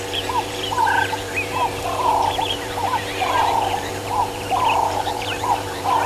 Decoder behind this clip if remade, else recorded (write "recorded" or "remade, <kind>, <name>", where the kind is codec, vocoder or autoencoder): remade, vocoder, BigVGAN v2